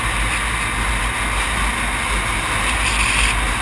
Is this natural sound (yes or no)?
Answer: yes